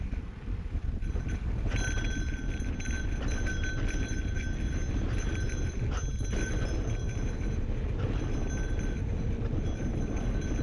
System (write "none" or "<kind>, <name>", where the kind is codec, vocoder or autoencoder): none